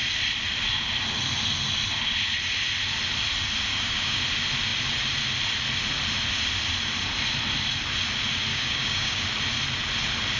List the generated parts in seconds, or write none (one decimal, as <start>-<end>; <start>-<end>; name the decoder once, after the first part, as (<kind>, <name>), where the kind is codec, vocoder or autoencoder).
3.7-4.2 (codec, DAC); 8.5-9.2